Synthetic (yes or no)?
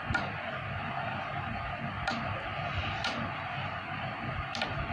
no